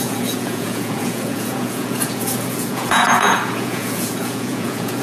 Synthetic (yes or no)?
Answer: yes